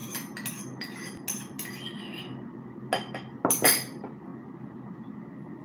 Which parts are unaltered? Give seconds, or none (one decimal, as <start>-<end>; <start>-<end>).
0.0-5.6